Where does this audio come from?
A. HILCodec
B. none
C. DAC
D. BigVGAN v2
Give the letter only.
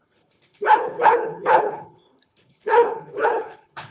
A